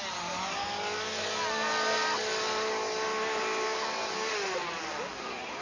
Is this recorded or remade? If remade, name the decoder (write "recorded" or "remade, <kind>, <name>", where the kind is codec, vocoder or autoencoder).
recorded